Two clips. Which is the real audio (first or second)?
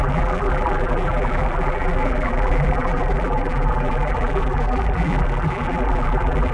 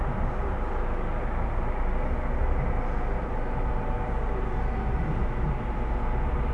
second